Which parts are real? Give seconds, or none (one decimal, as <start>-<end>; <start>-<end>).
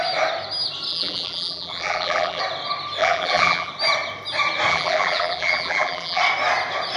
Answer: 0.0-0.9; 2.4-3.0; 3.7-4.7; 6.2-7.0